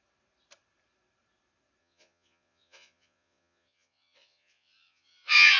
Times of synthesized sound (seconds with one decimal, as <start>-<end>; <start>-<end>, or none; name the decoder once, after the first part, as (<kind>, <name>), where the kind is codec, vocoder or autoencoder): 1.8-5.6 (vocoder, Vocos)